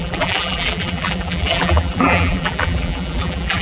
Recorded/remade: remade